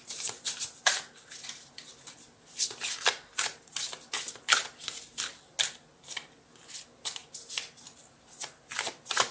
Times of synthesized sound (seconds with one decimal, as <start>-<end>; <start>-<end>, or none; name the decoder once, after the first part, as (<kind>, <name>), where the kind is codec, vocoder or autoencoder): 7.2-9.3 (vocoder, BigVGAN v2)